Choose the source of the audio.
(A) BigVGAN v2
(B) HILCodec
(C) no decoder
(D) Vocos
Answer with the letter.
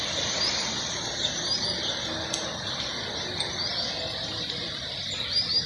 C